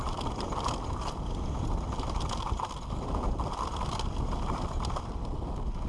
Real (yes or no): yes